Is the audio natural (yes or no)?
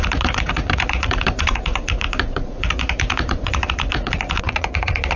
no